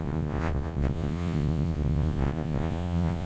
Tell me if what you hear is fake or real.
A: fake